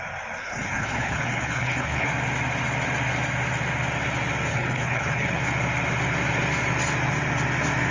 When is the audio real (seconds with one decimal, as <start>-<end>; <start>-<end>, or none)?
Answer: 0.0-0.4; 2.1-4.5; 5.4-7.9